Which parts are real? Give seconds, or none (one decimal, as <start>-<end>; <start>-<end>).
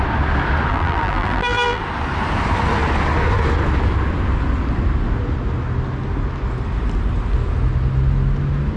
0.0-0.7; 1.8-8.8